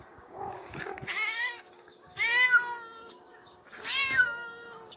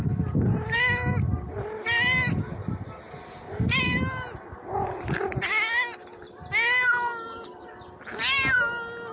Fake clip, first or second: first